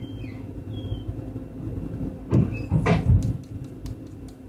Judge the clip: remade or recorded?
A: recorded